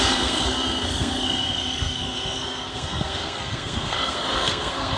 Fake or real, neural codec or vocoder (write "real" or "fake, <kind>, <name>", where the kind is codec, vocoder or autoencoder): fake, codec, SNAC